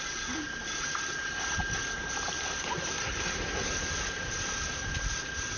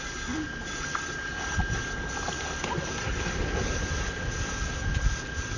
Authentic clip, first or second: second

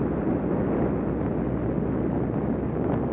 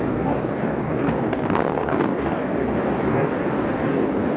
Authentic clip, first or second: first